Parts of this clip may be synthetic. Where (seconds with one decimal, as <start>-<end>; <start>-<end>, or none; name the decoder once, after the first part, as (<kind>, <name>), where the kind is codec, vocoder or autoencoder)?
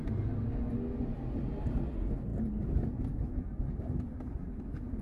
none